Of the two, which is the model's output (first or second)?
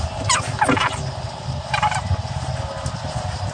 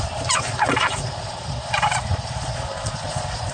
second